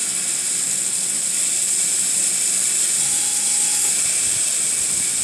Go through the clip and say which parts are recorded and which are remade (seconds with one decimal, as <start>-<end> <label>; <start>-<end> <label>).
0.0-3.0 recorded; 3.0-3.9 remade; 3.9-5.2 recorded